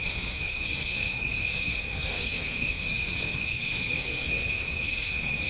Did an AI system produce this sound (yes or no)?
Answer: yes